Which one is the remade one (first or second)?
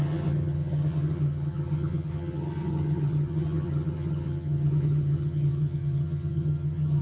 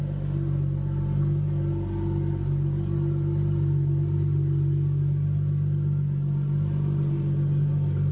first